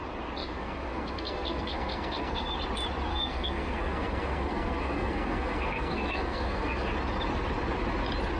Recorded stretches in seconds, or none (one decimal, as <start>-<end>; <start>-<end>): 0.0-0.4; 2.5-3.1; 6.9-8.4